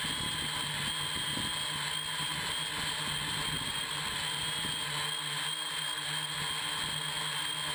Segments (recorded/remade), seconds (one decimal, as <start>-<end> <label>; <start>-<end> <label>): 0.0-7.7 recorded